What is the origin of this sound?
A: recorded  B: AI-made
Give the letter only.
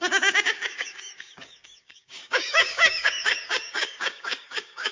B